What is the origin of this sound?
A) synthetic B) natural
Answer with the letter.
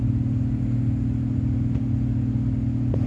B